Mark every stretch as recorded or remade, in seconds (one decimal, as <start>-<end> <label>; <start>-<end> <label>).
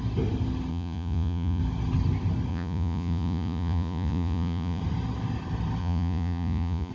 0.0-0.7 recorded; 0.7-1.6 remade; 1.6-2.5 recorded; 2.5-4.8 remade; 4.8-5.8 recorded; 5.8-6.9 remade